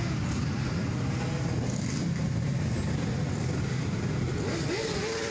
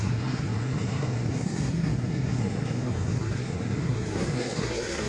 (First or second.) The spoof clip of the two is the second